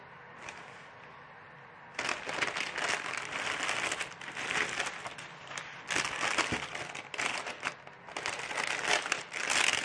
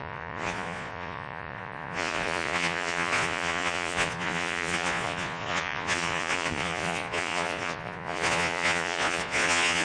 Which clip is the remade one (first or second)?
second